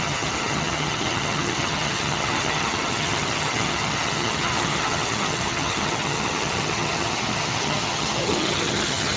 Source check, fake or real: fake